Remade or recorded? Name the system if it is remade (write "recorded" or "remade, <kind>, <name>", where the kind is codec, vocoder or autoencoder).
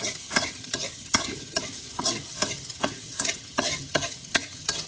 remade, vocoder, HiFi-GAN